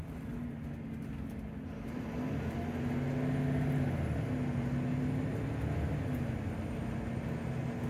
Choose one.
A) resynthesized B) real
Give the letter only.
B